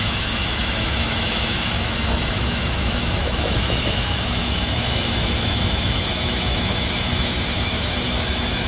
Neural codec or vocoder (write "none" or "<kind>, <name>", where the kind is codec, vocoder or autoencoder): autoencoder, DAC-VAE